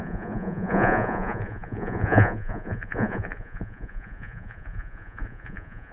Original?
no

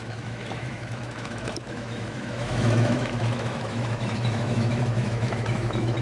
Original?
no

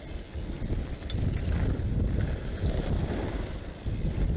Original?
yes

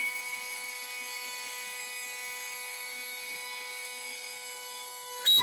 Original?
no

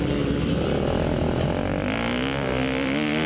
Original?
yes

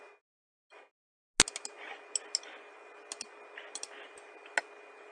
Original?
yes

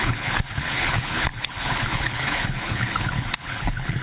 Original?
no